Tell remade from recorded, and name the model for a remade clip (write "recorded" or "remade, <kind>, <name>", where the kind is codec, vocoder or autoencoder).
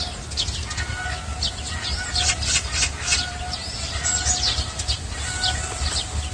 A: recorded